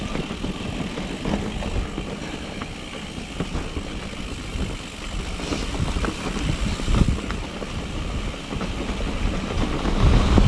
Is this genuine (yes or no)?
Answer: yes